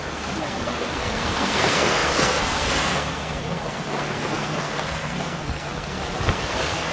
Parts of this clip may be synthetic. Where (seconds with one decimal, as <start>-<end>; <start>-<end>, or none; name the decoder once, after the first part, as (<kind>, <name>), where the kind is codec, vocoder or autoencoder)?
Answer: 0.0-6.9 (codec, SNAC)